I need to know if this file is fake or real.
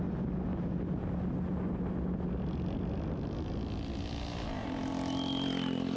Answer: real